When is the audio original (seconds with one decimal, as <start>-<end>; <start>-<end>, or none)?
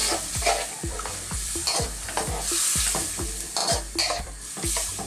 3.6-4.2